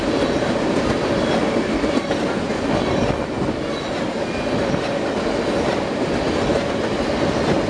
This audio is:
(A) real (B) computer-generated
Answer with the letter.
A